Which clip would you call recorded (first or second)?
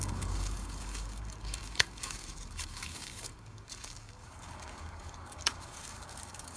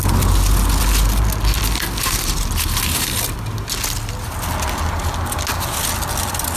second